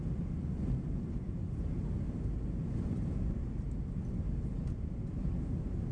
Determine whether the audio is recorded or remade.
recorded